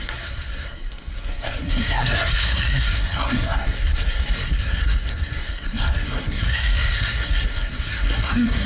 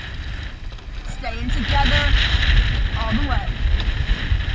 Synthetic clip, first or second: first